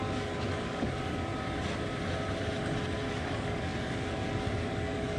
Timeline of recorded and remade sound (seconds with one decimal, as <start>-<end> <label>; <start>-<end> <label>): 0.0-1.3 remade; 1.3-3.1 recorded; 3.1-5.2 remade